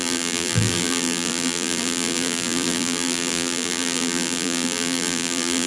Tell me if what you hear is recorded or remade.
remade